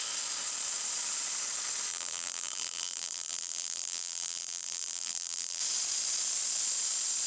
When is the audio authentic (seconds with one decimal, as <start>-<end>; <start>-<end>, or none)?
0.0-1.9; 5.6-7.3